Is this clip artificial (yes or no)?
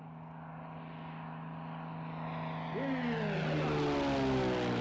no